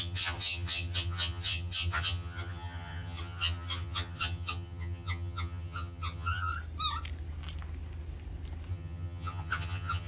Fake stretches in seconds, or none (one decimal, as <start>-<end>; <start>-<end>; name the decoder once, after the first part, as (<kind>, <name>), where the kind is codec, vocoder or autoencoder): 0.0-6.5 (vocoder, HiFi-GAN); 8.7-10.1

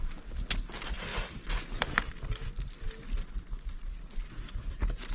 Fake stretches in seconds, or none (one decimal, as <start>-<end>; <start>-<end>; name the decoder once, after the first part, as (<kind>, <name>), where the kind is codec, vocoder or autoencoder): none

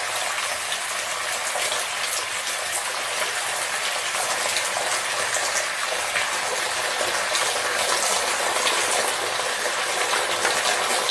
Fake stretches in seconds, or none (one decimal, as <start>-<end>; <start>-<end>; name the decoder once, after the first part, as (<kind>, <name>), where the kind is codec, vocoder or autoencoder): none

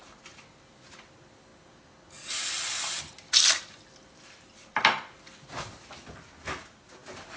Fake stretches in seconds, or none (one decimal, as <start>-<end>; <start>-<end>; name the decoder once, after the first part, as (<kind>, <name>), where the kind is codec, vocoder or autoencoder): none